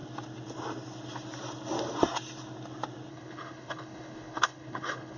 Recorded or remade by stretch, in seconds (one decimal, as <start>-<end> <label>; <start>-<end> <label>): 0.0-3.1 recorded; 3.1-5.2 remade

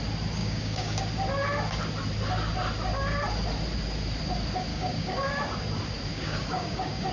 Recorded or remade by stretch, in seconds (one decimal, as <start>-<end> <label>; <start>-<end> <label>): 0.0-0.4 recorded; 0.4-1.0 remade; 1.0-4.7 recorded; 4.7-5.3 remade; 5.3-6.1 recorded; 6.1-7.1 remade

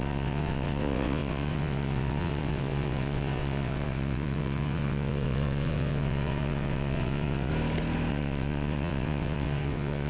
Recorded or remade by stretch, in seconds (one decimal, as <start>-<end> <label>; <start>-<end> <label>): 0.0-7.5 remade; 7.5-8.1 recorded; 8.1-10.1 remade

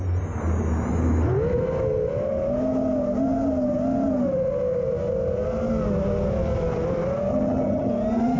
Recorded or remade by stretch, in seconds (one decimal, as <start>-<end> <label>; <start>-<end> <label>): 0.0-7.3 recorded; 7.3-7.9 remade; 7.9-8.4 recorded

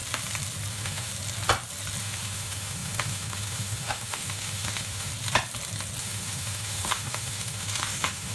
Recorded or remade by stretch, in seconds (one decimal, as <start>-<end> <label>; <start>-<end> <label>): 0.0-0.7 recorded; 0.7-1.1 remade; 1.1-2.0 recorded; 2.0-5.1 remade; 5.1-6.0 recorded; 6.0-8.3 remade

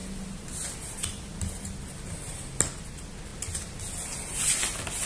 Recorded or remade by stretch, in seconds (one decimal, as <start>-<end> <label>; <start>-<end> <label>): 0.0-5.1 recorded

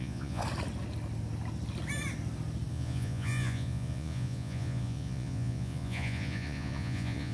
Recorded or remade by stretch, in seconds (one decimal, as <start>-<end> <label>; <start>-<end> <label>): 0.0-0.4 remade; 0.4-2.7 recorded; 2.7-7.3 remade